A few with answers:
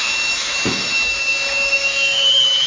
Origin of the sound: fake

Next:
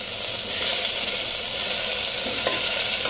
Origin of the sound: real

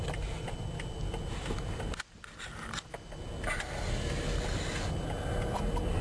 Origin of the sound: real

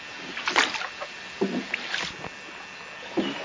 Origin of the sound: real